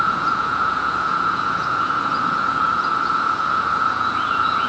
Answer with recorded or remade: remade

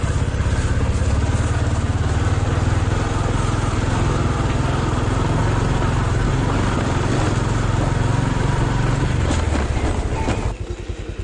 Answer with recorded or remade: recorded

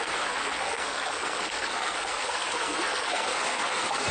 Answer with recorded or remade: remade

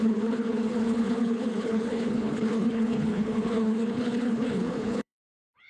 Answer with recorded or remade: remade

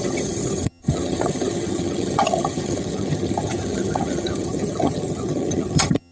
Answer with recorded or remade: remade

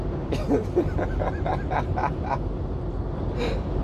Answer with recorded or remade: recorded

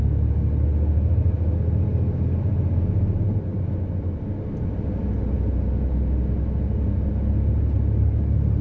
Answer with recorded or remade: recorded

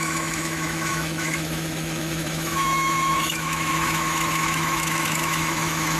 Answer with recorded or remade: remade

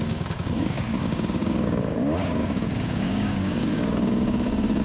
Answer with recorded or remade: remade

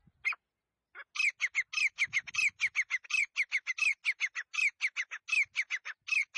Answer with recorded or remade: recorded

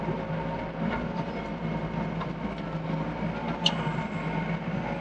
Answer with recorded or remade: recorded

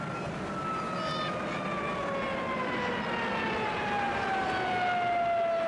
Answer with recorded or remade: recorded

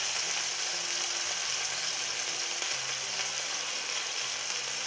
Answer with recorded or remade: recorded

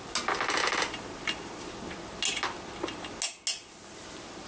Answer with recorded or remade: recorded